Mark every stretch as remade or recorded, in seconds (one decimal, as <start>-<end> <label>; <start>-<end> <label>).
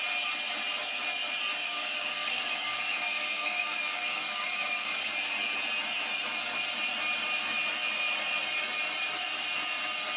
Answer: 0.0-1.6 recorded; 1.6-5.1 remade; 5.1-10.2 recorded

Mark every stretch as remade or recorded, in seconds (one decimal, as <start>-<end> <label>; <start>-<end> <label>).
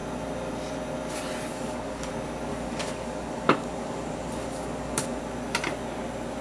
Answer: 0.0-1.5 recorded; 1.5-2.1 remade; 2.1-2.5 recorded; 2.5-5.2 remade; 5.2-6.4 recorded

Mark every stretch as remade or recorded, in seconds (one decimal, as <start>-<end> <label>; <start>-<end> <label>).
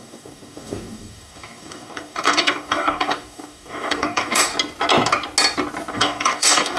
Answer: 0.0-4.5 remade; 4.5-5.9 recorded; 5.9-6.8 remade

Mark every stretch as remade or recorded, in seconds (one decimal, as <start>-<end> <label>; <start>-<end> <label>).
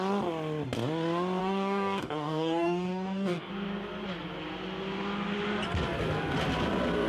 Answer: 0.0-1.4 recorded; 1.4-3.5 remade; 3.5-7.1 recorded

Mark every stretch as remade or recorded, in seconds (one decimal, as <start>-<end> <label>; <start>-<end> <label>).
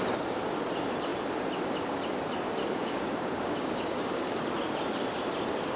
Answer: 0.0-2.6 recorded; 2.6-4.4 remade; 4.4-5.8 recorded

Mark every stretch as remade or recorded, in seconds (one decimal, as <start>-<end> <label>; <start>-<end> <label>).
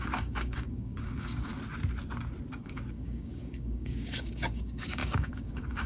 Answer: 0.0-1.5 remade; 1.5-2.5 recorded; 2.5-5.9 remade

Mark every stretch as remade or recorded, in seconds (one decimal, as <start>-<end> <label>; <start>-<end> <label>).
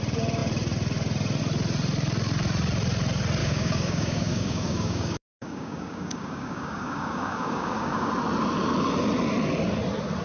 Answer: 0.0-3.4 recorded; 3.4-8.1 remade; 8.1-10.2 recorded